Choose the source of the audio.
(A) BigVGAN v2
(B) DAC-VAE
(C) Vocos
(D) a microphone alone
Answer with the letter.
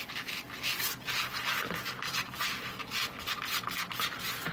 D